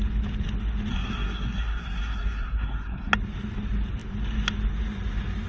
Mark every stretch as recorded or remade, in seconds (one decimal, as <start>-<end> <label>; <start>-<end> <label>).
0.0-0.9 recorded; 0.9-3.1 remade; 3.1-5.5 recorded